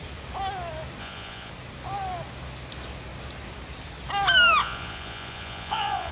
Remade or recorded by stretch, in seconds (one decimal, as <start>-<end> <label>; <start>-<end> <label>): 0.0-1.0 recorded; 1.0-1.5 remade; 1.5-4.6 recorded; 4.6-6.1 remade